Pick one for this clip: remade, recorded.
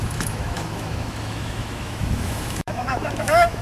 remade